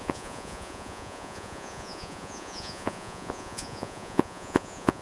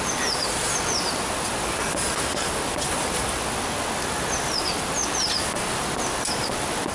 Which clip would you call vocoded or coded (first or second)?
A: first